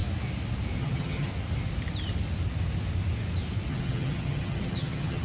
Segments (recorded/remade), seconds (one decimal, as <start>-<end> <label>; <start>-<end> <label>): 0.0-0.8 recorded; 0.8-1.3 remade; 1.3-3.7 recorded; 3.7-5.2 remade